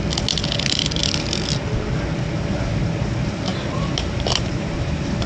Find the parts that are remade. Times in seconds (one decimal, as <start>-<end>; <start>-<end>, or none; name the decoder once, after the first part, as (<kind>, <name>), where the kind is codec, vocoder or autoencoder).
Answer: 3.5-5.3 (vocoder, BigVGAN v2)